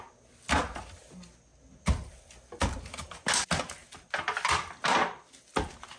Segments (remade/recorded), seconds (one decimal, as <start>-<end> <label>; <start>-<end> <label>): 0.0-6.0 recorded